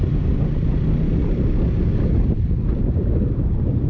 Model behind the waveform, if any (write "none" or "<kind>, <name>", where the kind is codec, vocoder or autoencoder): none